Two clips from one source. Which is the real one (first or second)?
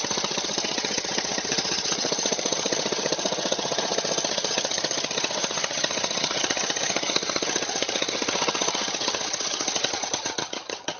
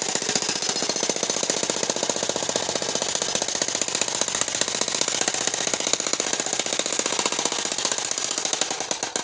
second